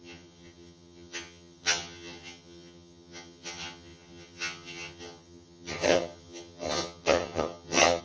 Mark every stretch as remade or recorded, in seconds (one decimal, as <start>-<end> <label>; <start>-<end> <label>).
0.0-8.0 remade